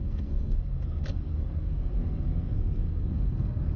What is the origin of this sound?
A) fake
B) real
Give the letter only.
A